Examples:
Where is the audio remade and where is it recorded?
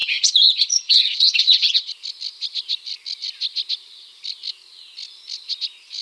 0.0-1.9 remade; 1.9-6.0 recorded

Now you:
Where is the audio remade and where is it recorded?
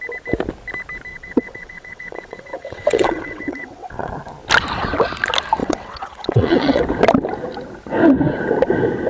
0.0-1.1 recorded; 1.1-4.1 remade; 4.1-5.6 recorded; 5.6-6.8 remade; 6.8-9.1 recorded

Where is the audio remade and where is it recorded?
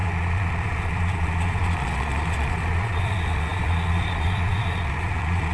0.0-5.5 remade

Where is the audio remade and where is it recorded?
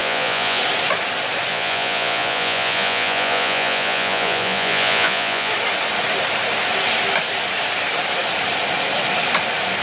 0.0-0.6 remade; 0.6-1.5 recorded; 1.5-5.5 remade; 5.5-9.8 recorded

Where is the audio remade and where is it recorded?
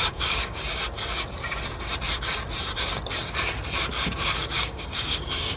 0.0-0.8 remade; 0.8-3.9 recorded; 3.9-5.6 remade